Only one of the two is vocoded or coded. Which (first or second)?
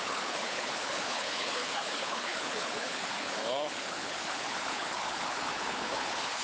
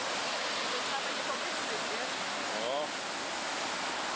first